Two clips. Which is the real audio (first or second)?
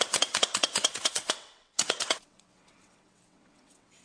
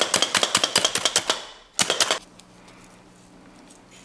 second